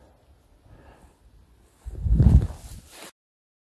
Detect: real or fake real